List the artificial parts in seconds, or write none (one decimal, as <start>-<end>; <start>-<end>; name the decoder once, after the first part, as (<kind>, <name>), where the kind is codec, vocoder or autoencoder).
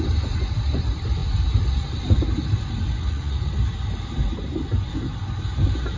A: 3.0-3.5 (vocoder, Vocos)